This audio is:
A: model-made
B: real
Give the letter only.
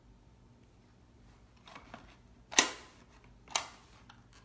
B